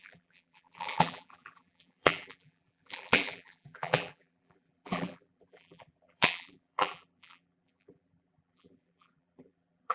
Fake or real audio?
fake